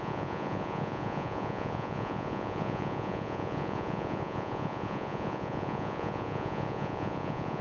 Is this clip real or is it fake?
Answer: fake